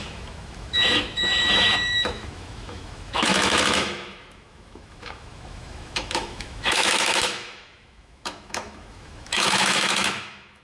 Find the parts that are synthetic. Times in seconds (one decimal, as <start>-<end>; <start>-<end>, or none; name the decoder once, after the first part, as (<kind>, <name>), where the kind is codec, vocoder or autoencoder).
0.0-10.6 (autoencoder, DAC-VAE)